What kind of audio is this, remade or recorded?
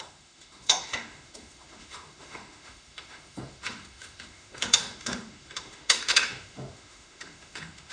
remade